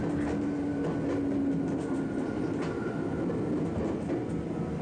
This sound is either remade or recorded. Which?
recorded